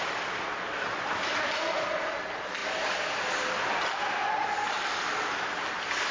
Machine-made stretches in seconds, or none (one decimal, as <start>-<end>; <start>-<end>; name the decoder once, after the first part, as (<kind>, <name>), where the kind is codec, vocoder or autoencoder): none